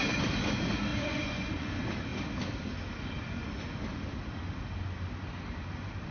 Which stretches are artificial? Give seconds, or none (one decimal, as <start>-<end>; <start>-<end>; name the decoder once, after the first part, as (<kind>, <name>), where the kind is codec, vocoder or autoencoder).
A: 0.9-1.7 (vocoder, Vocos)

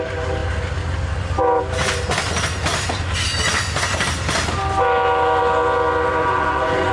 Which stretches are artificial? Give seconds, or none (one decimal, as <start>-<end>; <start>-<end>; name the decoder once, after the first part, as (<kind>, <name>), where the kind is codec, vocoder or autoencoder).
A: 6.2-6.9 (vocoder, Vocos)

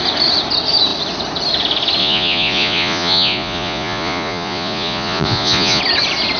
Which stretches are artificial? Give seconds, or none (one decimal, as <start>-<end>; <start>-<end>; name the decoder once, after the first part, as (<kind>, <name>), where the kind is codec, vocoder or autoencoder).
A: 2.0-5.8 (vocoder, Vocos)

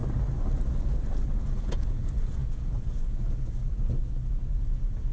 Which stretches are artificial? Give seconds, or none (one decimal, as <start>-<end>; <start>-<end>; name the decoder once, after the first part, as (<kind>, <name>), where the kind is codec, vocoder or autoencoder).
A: 1.4-5.1 (vocoder, Vocos)